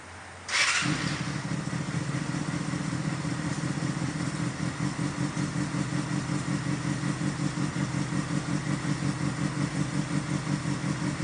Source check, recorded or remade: recorded